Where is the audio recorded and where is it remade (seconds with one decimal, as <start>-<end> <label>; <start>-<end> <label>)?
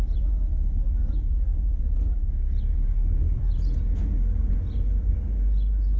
0.0-6.0 recorded